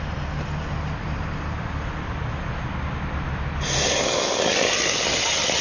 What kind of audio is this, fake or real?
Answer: real